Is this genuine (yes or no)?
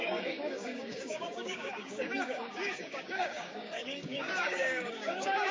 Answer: no